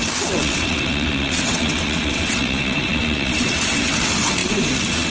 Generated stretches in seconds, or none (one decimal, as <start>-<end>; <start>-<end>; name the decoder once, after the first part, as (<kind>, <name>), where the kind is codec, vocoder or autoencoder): 0.0-5.1 (vocoder, WaveNeXt)

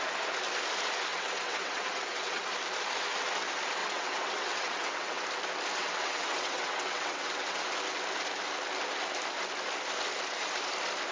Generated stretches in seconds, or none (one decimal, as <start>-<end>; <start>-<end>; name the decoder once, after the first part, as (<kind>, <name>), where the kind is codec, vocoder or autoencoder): 1.1-2.5 (vocoder, WaveNeXt); 3.8-5.2; 5.8-7.7

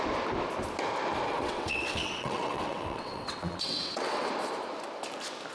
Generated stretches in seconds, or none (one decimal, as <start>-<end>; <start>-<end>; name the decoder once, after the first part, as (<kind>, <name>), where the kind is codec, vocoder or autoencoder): 1.3-4.3 (vocoder, WaveNeXt)

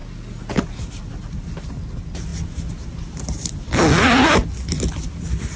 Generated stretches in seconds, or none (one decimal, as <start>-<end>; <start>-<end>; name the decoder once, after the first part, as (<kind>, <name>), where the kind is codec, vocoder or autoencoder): none

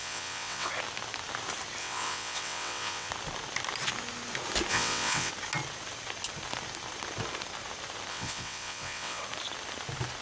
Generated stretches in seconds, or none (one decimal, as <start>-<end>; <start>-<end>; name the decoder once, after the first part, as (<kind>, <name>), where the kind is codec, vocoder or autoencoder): 0.0-0.7 (vocoder, WaveNeXt); 1.8-3.1; 4.7-5.3; 8.1-9.2

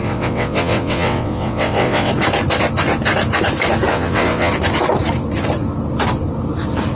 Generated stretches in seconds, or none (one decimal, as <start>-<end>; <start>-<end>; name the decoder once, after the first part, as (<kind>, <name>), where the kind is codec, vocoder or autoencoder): 0.0-2.1 (vocoder, WaveNeXt); 3.9-4.5